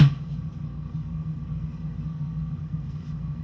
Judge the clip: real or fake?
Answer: fake